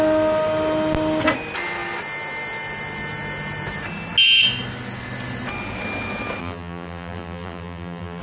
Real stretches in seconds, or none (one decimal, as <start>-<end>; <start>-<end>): 0.0-6.4